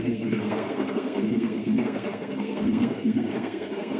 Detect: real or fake fake